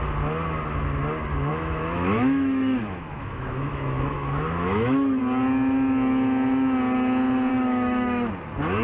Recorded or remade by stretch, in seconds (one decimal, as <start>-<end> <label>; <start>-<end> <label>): 0.0-1.5 recorded; 1.5-5.2 remade; 5.2-7.5 recorded; 7.5-8.3 remade; 8.3-8.8 recorded